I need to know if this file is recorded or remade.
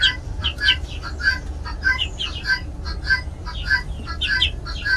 recorded